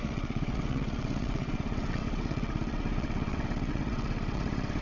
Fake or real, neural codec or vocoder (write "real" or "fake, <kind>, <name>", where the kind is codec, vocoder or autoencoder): fake, vocoder, WaveNeXt